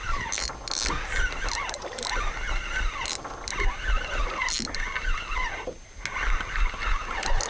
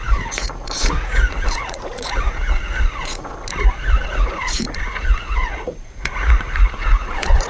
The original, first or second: first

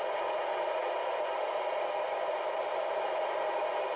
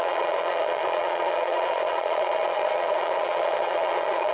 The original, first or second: first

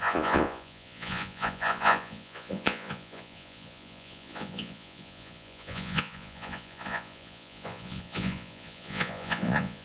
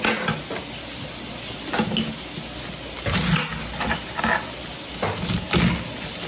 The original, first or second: second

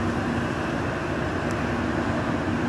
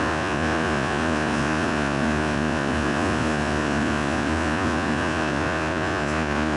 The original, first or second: first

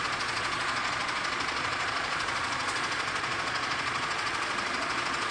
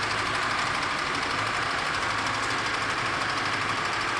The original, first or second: second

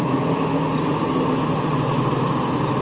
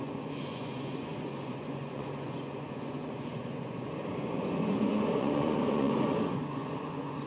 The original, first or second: first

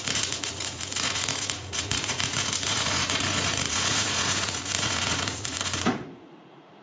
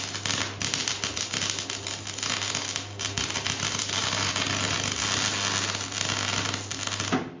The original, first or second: second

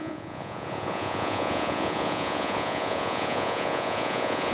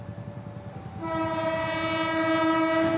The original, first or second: second